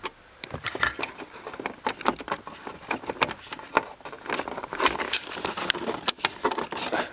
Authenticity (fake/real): real